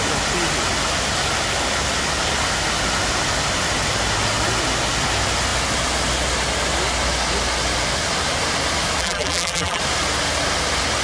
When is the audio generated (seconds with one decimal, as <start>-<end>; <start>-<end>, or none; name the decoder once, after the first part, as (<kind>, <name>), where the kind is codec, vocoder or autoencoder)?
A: 9.0-9.8 (vocoder, BigVGAN v2)